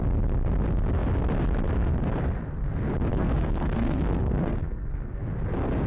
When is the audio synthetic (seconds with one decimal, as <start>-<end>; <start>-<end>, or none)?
3.1-5.2